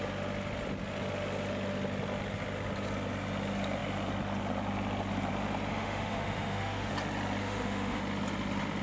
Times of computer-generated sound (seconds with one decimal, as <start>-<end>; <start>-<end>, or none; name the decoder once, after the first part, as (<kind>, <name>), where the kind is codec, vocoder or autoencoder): 5.7-6.9 (autoencoder, DAC-VAE); 7.4-8.0